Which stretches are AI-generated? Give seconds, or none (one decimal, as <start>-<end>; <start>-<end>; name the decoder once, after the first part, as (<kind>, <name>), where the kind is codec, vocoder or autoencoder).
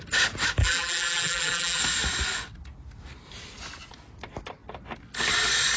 0.6-1.8 (vocoder, BigVGAN v2)